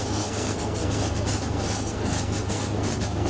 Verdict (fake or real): fake